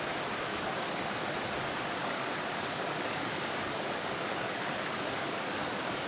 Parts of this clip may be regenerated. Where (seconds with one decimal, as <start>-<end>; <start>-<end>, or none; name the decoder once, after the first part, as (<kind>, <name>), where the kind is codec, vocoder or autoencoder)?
0.5-1.1 (codec, DAC); 2.0-6.1